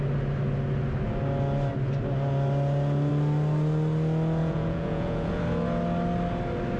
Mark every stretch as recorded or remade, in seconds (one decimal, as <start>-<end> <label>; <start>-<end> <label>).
0.0-4.4 recorded; 4.4-5.4 remade; 5.4-6.8 recorded